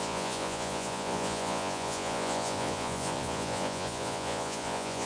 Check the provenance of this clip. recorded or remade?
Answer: remade